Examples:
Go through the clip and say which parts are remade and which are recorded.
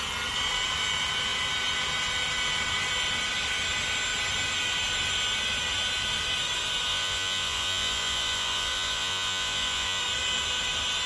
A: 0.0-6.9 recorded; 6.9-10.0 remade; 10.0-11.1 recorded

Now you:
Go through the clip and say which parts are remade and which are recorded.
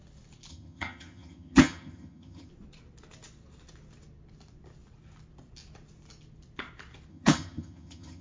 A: 0.0-0.5 recorded; 0.5-2.5 remade; 2.5-7.1 recorded; 7.1-8.2 remade